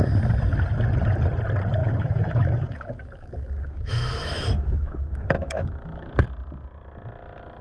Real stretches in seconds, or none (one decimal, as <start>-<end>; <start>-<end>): 0.0-1.8; 6.1-7.6

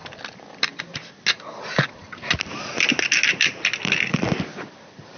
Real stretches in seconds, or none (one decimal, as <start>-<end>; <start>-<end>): 0.0-5.2

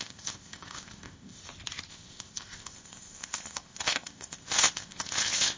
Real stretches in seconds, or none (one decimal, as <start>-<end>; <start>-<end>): 1.4-1.9

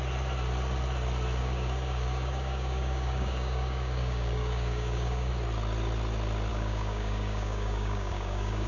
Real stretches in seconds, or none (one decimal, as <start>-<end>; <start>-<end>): 0.0-1.4; 5.3-6.5

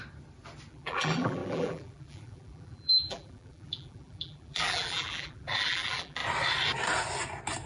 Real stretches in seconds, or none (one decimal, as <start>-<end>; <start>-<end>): 0.0-0.7; 6.2-7.7

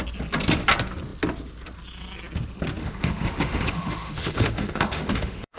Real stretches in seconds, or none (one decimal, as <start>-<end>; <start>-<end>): 0.0-2.8

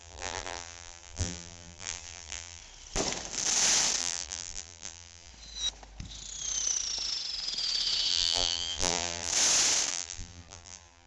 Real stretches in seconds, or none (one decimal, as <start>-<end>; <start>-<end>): 2.6-4.0; 5.3-8.1; 9.3-9.9